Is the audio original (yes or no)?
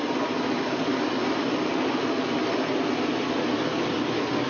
yes